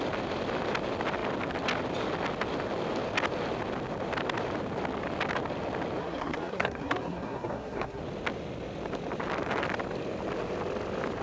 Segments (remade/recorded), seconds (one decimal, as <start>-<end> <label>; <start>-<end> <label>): 0.0-6.0 recorded; 6.0-8.0 remade; 8.0-11.2 recorded